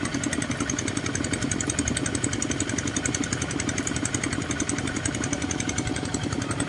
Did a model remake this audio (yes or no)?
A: no